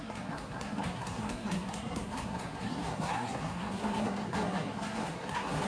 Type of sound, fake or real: fake